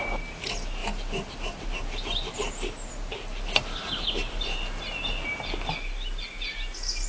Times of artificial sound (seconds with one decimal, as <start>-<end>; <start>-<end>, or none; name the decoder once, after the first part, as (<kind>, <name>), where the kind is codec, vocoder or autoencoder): none